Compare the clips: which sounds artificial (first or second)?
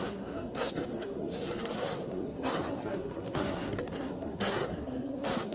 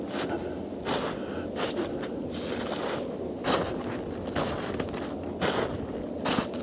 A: first